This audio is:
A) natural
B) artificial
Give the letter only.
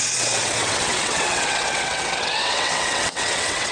B